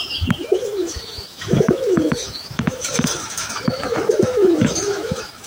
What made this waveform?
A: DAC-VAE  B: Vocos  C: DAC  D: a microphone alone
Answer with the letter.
A